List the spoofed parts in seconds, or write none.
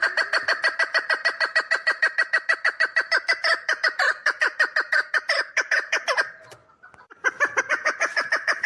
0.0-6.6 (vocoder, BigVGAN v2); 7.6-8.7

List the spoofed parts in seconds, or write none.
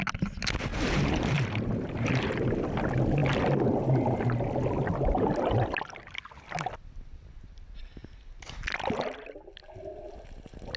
0.7-2.3 (vocoder, BigVGAN v2)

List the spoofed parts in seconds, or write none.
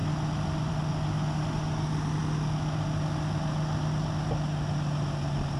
none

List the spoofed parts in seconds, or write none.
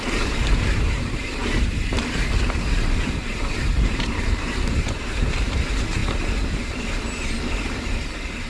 0.0-6.0 (vocoder, BigVGAN v2); 6.5-8.5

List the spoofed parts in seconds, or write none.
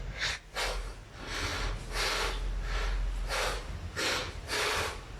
none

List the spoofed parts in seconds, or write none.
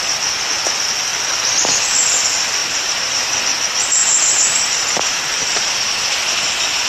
2.6-3.4 (vocoder, BigVGAN v2); 4.0-6.1